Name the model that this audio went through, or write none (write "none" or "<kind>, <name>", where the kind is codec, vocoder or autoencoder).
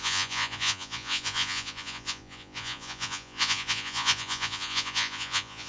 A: vocoder, Vocos